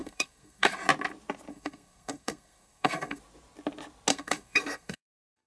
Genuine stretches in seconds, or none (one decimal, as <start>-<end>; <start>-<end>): 0.7-1.5; 3.2-4.1